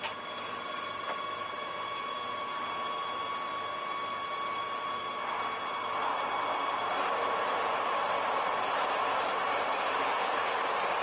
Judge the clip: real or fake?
real